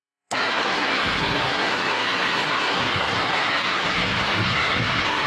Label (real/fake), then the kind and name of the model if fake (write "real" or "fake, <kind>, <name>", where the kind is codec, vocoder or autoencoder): fake, codec, SNAC